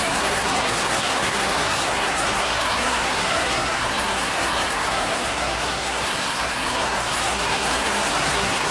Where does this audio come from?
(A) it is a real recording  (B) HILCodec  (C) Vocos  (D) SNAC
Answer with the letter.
D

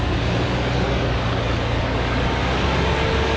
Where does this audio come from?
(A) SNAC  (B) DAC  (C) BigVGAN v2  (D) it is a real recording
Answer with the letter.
B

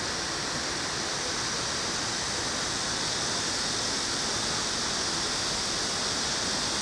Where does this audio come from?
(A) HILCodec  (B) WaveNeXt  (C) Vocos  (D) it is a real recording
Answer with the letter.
D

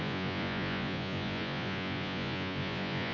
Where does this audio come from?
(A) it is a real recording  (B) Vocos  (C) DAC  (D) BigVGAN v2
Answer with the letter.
B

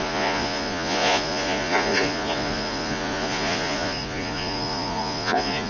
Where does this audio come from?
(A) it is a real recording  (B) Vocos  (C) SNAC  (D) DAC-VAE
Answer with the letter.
B